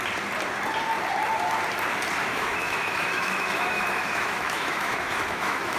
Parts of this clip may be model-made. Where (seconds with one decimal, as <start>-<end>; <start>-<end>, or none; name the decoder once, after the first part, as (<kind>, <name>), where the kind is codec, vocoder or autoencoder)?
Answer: 2.2-5.8 (autoencoder, DAC-VAE)